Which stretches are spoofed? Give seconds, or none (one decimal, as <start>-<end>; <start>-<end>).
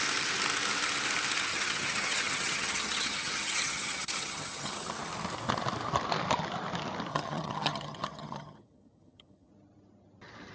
1.5-4.9; 7.1-9.5